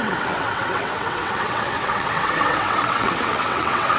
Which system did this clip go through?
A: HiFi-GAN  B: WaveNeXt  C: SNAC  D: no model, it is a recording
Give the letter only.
B